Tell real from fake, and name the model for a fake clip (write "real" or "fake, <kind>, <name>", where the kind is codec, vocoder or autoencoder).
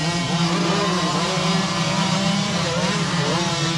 fake, vocoder, BigVGAN v2